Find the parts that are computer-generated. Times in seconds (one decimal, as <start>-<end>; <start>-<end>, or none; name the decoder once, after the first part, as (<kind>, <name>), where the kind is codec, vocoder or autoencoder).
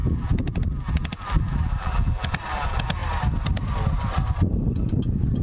0.0-2.3 (vocoder, BigVGAN v2)